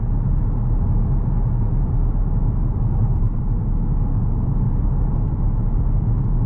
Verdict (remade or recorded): recorded